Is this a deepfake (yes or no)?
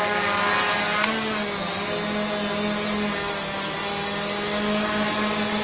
no